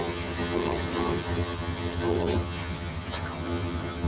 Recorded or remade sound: remade